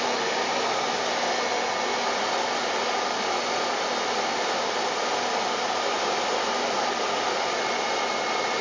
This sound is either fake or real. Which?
real